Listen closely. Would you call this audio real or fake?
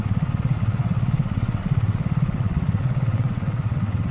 fake